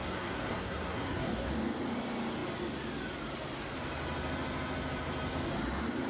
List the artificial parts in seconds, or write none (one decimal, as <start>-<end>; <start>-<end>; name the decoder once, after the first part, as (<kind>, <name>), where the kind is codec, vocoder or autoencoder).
0.0-1.5 (codec, SNAC)